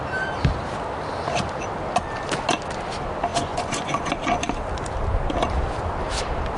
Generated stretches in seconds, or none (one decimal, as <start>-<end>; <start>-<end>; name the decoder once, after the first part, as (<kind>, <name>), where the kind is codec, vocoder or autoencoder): 3.3-4.1 (vocoder, Vocos)